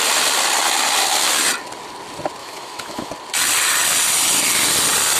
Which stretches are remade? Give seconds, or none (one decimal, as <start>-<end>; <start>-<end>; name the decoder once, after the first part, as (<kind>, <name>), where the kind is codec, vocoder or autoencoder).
2.4-3.1 (autoencoder, DAC-VAE)